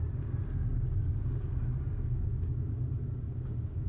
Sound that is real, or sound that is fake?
fake